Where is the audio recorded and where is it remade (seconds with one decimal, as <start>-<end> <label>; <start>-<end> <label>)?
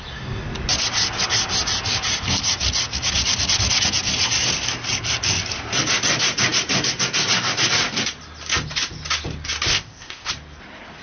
0.0-9.7 recorded; 9.7-10.3 remade; 10.3-11.0 recorded